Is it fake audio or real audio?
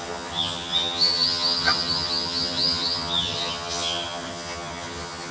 fake